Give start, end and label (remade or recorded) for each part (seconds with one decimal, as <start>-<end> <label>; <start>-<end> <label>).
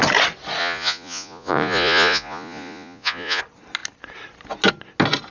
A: 0.0-0.6 recorded; 0.6-3.4 remade; 3.4-5.3 recorded